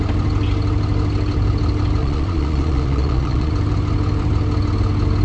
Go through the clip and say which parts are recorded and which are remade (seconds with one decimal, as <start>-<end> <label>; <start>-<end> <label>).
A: 0.0-2.0 recorded; 2.0-3.5 remade; 3.5-5.2 recorded